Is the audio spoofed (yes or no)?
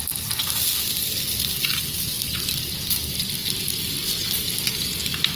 no